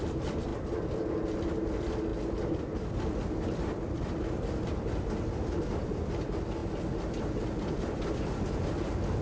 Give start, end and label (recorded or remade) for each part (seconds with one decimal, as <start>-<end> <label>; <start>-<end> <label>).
0.0-9.2 recorded